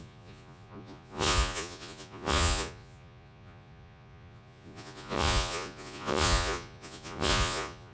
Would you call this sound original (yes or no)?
no